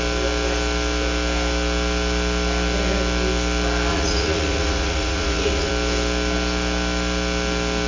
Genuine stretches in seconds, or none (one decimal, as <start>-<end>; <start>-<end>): 0.0-3.9; 5.7-7.9